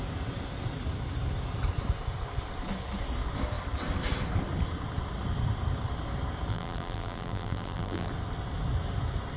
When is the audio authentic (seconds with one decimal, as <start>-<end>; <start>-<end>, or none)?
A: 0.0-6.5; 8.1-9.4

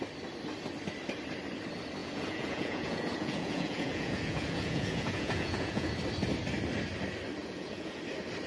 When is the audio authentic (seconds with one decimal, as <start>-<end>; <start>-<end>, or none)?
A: 0.0-2.0; 5.9-7.4; 8.0-8.5

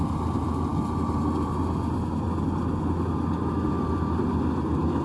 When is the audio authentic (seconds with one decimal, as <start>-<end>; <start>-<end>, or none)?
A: 0.0-5.0

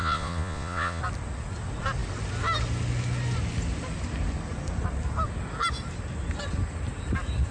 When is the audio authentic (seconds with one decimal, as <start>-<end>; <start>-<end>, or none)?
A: 1.0-7.5

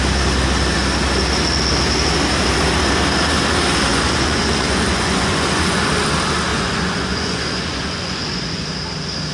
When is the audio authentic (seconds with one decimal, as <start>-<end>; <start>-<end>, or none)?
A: 0.0-3.9; 5.8-6.5; 8.7-9.3

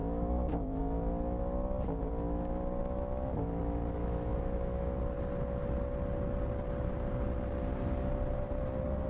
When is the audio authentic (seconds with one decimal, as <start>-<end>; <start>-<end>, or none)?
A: 0.8-2.8; 3.6-4.0; 5.0-9.1